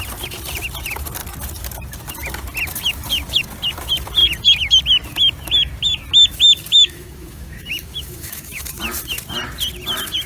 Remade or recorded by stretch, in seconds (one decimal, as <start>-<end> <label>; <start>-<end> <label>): 0.0-6.7 recorded; 6.7-8.8 remade; 8.8-10.3 recorded